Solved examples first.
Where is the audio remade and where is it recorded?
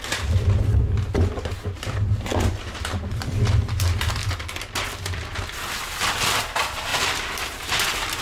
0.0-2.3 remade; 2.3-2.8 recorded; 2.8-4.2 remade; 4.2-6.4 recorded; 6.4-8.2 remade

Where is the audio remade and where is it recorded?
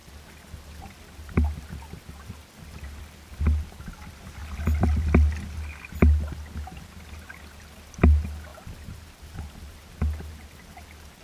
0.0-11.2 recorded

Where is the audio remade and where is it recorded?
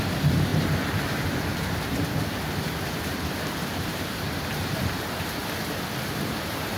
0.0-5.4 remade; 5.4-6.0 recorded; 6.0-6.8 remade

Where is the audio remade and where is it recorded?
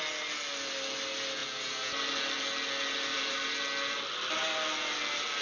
0.0-3.1 recorded; 3.1-3.6 remade; 3.6-5.4 recorded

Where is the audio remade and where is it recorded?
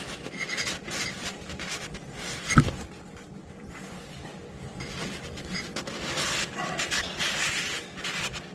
0.0-3.4 recorded; 3.4-4.3 remade; 4.3-8.5 recorded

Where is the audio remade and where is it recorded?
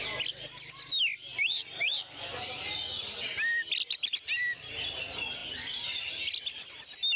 0.0-1.3 recorded; 1.3-2.4 remade; 2.4-7.2 recorded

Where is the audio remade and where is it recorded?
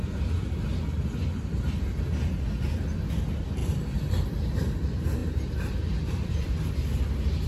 0.0-3.6 recorded; 3.6-4.2 remade; 4.2-5.2 recorded; 5.2-6.7 remade; 6.7-7.5 recorded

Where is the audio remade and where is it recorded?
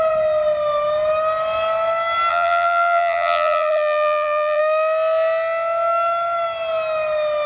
0.0-2.3 recorded; 2.3-4.6 remade; 4.6-7.5 recorded